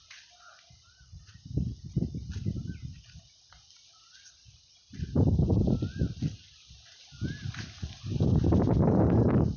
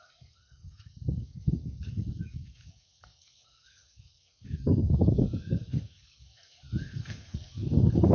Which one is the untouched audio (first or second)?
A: first